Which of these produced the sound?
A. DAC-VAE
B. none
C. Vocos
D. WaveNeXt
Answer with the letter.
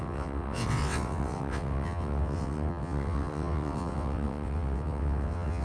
D